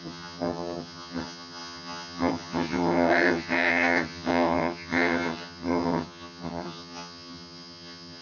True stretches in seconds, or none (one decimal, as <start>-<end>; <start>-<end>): none